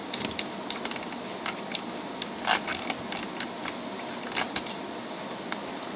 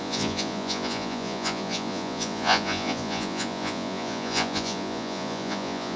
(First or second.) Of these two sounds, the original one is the first